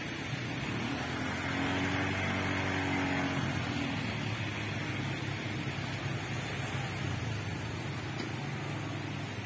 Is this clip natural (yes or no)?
yes